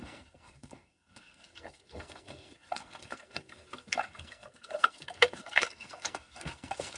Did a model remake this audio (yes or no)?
yes